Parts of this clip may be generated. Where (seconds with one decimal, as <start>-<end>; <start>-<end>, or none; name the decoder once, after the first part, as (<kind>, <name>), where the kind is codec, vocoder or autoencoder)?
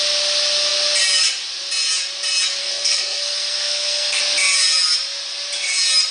2.6-4.2 (codec, SNAC)